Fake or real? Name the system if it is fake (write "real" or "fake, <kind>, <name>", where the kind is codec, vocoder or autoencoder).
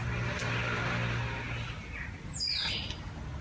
real